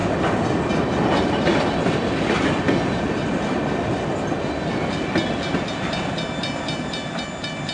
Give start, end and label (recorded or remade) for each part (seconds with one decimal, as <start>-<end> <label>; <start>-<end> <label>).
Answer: 0.0-7.7 recorded